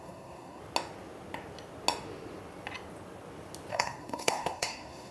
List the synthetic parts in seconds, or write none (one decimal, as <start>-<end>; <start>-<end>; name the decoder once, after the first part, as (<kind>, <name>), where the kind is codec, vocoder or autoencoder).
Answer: 0.0-0.6 (codec, SNAC); 3.7-5.1